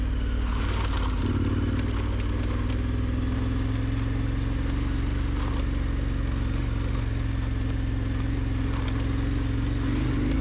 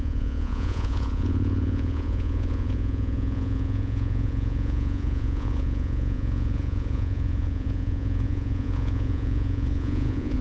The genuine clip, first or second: first